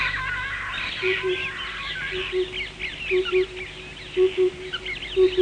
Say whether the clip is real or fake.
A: real